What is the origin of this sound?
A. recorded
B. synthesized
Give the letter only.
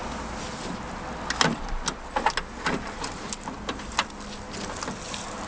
A